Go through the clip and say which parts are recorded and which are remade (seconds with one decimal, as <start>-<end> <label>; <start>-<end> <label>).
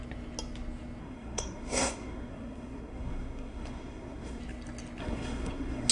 0.0-1.0 recorded; 1.0-4.4 remade; 4.4-5.0 recorded; 5.0-5.9 remade